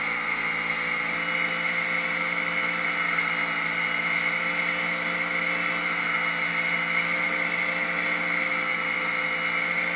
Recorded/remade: recorded